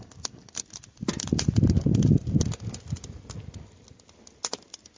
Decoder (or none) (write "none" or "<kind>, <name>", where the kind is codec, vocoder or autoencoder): none